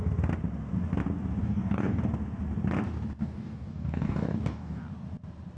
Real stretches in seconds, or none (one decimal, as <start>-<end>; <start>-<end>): 0.0-1.4; 2.0-3.2; 4.8-5.6